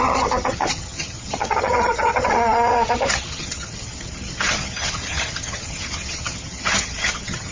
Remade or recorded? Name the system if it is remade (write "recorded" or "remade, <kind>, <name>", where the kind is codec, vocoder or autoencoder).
remade, vocoder, HiFi-GAN